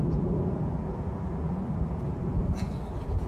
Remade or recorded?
remade